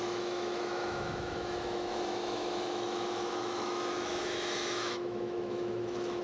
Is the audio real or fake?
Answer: fake